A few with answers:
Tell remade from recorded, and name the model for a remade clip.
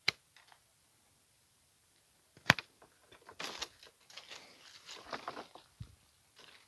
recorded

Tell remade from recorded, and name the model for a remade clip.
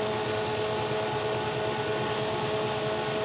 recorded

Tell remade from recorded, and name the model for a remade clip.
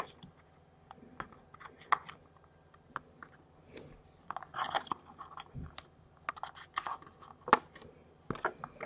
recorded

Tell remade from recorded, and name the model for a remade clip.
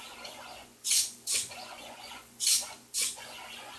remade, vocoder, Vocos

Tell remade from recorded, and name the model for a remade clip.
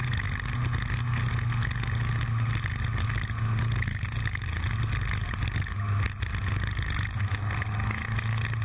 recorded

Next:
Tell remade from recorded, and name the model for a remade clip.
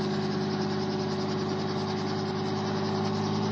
recorded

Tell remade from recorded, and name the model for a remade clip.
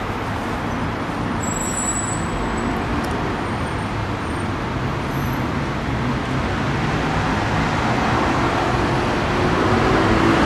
recorded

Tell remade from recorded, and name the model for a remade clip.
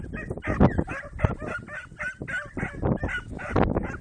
recorded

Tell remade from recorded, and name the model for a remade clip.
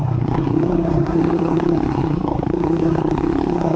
remade, codec, SNAC